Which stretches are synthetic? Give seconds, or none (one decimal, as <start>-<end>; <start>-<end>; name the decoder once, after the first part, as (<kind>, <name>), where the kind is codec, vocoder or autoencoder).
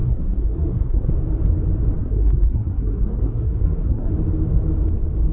0.0-1.1 (codec, SNAC); 2.0-4.1